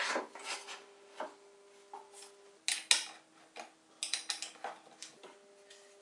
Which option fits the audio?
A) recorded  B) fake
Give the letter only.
A